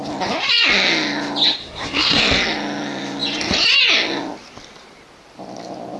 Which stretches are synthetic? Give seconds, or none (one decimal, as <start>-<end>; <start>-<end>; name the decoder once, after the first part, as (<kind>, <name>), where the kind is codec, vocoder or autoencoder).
1.6-2.2 (codec, SNAC)